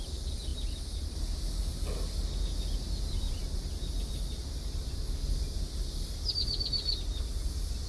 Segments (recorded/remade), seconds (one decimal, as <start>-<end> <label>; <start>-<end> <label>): 0.0-7.9 recorded